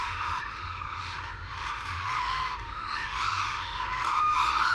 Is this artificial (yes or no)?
yes